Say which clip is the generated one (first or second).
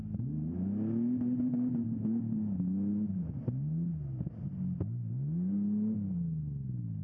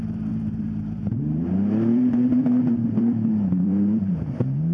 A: second